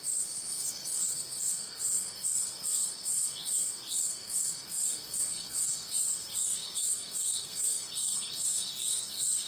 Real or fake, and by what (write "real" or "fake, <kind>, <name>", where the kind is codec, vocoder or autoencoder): fake, codec, SNAC